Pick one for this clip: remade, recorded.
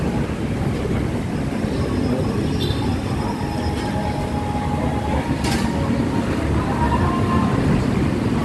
recorded